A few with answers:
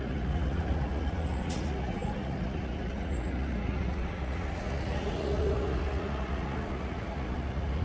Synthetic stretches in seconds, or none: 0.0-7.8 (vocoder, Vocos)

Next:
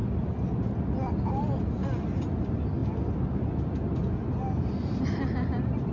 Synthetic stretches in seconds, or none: none

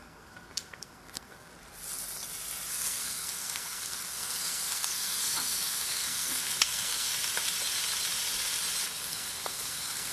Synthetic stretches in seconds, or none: 0.0-1.5 (codec, SNAC); 2.7-7.1; 9.0-10.1

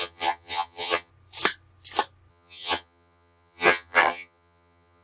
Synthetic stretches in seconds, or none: 0.0-1.1 (vocoder, HiFi-GAN); 2.3-5.0

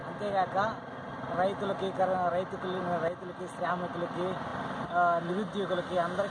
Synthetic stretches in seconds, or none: none

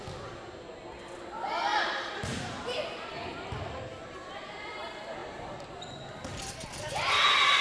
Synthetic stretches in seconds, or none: 1.7-3.3 (vocoder, BigVGAN v2); 5.2-5.9

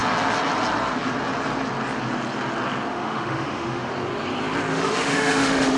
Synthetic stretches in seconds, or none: 2.9-3.9 (autoencoder, DAC-VAE); 4.7-5.8

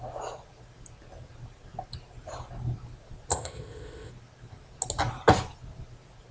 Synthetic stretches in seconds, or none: 3.3-4.1 (codec, ZipCodec)